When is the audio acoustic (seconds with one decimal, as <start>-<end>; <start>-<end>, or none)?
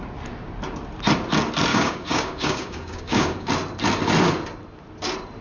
0.0-1.7; 3.5-5.4